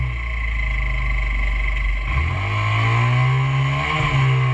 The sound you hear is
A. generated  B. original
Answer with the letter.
B